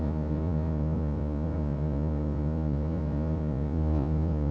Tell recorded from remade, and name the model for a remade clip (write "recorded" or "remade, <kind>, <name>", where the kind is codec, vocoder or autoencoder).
remade, vocoder, Vocos